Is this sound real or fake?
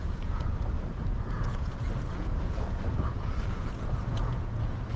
fake